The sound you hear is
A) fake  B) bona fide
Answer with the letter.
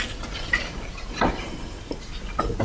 B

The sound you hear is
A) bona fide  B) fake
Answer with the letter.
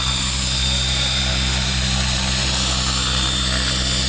A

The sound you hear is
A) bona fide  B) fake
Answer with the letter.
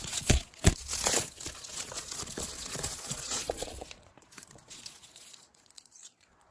B